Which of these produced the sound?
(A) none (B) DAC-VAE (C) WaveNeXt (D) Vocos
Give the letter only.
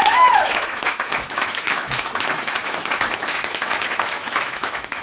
B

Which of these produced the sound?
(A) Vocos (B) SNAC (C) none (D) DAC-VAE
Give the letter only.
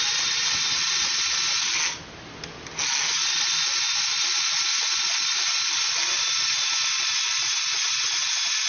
C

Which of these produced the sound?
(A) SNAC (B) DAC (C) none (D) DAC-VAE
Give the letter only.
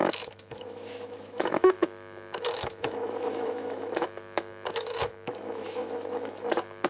D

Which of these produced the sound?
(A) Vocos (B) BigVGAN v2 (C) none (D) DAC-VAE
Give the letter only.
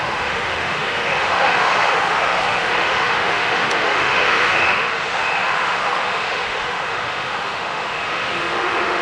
D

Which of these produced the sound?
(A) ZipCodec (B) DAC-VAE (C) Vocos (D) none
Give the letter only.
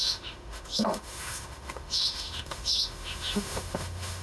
B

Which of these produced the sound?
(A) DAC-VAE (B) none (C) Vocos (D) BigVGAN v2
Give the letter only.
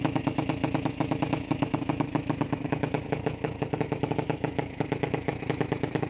A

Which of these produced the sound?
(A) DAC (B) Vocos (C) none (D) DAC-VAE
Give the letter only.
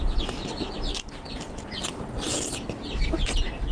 C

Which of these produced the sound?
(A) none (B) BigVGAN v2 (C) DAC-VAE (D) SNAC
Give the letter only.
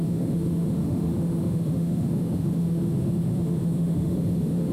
C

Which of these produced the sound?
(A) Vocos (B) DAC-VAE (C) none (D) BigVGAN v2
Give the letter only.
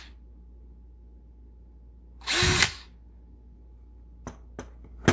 C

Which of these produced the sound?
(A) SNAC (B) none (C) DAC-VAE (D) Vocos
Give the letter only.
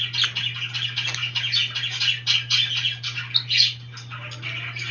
B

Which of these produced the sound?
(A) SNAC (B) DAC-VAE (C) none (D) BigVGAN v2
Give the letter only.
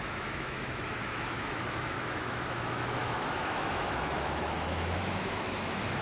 B